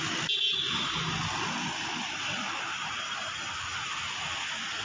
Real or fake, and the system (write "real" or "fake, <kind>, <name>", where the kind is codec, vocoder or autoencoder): real